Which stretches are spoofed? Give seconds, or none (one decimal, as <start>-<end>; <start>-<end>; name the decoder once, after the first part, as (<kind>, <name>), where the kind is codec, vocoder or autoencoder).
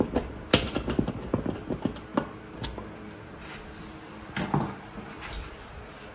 none